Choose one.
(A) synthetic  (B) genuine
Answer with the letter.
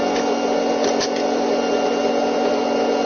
B